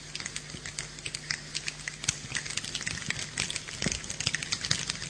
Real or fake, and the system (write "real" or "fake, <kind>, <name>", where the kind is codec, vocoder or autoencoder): real